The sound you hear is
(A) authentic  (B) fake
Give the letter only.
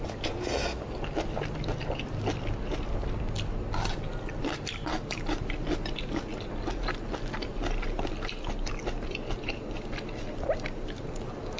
A